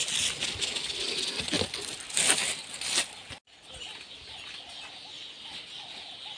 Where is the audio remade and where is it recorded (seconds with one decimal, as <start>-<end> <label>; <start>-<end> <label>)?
0.0-6.4 recorded